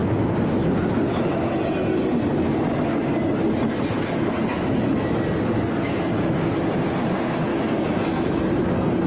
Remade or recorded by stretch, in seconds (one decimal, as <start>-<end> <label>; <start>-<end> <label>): 0.0-4.5 recorded; 4.5-5.2 remade; 5.2-7.5 recorded; 7.5-8.4 remade; 8.4-9.1 recorded